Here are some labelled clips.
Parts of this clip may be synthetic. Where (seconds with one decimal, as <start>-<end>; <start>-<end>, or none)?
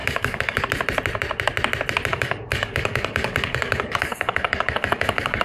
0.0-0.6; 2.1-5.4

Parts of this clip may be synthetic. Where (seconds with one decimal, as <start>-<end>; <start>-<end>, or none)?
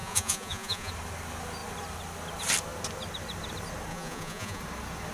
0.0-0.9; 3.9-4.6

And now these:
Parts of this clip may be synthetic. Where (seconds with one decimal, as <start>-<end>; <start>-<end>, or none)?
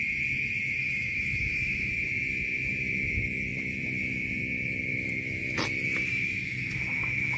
0.8-1.9; 6.1-7.4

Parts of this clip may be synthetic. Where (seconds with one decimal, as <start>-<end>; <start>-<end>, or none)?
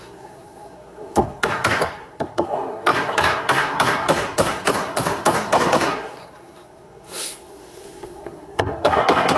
0.0-9.4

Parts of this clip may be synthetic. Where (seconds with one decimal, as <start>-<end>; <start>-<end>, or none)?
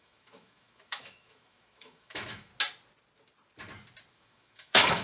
0.0-2.5; 4.1-5.0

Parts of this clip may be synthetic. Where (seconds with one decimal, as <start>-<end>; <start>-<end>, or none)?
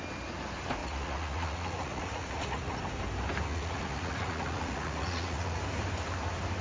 0.8-2.8; 3.5-5.6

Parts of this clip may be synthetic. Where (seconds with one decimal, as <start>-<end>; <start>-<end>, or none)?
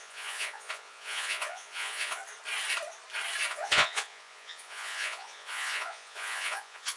0.0-2.2; 3.5-7.0